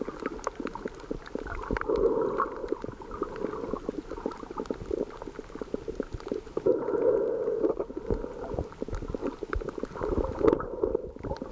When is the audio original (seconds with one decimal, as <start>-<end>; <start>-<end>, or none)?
0.0-11.5